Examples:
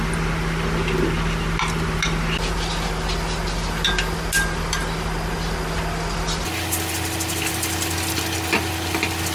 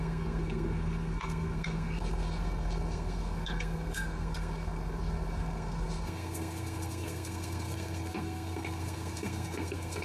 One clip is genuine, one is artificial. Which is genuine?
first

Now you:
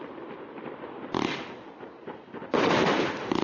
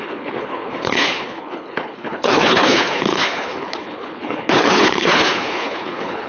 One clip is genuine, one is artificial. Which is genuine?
first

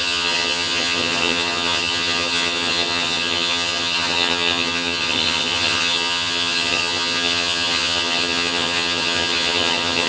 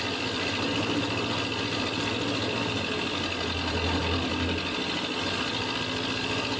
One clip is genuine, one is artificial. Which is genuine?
second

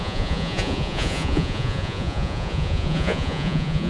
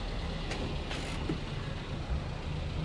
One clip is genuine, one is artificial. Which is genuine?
second